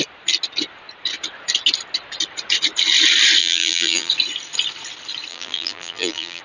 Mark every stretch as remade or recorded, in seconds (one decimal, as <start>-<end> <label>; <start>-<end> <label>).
0.0-3.4 recorded; 3.4-4.1 remade; 4.1-5.3 recorded; 5.3-6.4 remade